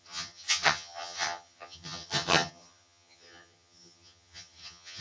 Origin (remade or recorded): remade